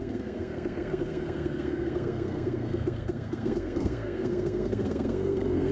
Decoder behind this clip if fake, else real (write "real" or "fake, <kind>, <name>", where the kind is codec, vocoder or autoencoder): fake, codec, SNAC